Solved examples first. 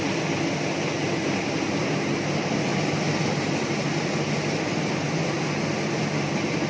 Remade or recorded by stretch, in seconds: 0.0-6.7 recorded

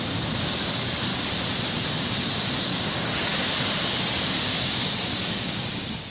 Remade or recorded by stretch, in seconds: 0.0-1.1 remade; 1.1-2.6 recorded; 2.6-6.1 remade

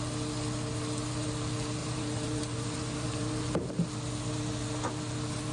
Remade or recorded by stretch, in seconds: 0.0-1.8 recorded; 1.8-3.7 remade; 3.7-5.5 recorded

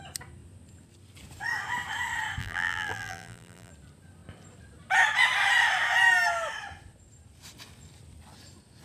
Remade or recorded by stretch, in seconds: 0.0-2.4 recorded; 2.4-3.7 remade; 3.7-8.8 recorded

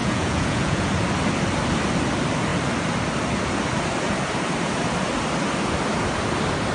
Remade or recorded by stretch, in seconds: 0.0-0.9 remade; 0.9-6.7 recorded

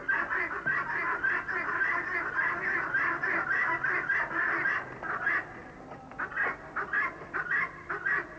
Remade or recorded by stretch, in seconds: 0.0-5.6 recorded; 5.6-7.9 remade; 7.9-8.4 recorded

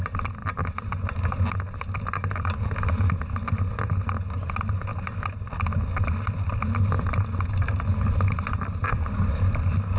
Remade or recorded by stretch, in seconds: 0.0-10.0 recorded

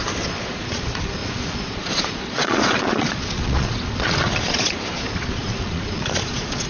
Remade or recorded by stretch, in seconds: 0.0-6.7 remade